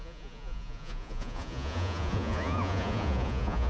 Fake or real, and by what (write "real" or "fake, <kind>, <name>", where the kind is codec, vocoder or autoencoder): fake, vocoder, Vocos